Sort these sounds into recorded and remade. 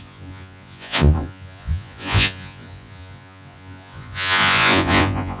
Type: remade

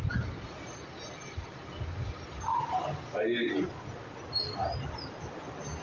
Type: recorded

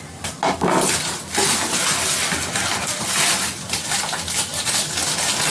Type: recorded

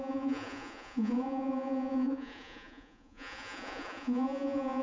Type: remade